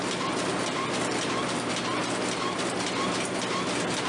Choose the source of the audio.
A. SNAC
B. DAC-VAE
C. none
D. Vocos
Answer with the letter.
C